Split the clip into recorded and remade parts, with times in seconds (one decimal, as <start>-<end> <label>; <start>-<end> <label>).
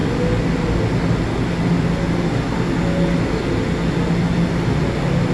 0.0-5.3 recorded